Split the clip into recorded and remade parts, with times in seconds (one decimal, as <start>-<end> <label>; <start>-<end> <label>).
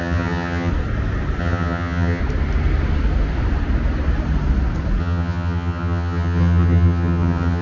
0.0-0.7 remade; 0.7-1.4 recorded; 1.4-2.2 remade; 2.2-5.0 recorded; 5.0-7.6 remade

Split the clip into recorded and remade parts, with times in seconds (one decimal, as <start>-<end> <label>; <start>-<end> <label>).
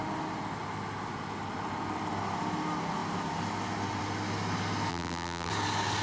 0.0-4.9 recorded; 4.9-5.5 remade; 5.5-6.0 recorded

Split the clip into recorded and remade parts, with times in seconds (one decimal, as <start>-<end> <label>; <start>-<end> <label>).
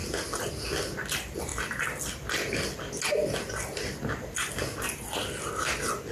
0.0-6.1 recorded